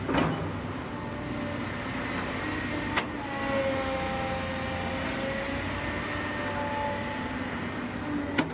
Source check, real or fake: real